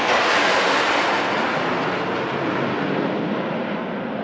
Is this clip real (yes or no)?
yes